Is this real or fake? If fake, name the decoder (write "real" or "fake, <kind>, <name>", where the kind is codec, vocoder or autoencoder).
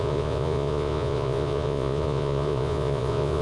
fake, vocoder, Vocos